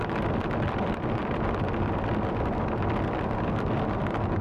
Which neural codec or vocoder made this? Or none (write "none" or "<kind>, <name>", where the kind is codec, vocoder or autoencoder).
none